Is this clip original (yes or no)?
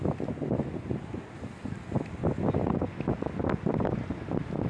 yes